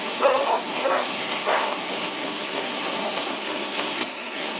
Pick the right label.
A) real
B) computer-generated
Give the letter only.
B